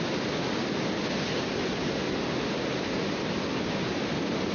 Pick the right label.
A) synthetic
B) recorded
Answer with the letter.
B